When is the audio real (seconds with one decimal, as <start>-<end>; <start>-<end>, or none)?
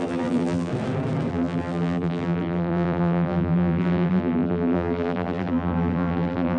0.7-1.3